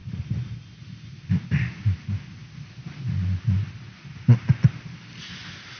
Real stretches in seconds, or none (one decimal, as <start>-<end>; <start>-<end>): 0.0-5.8